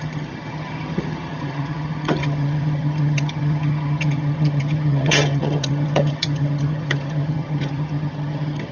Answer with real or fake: fake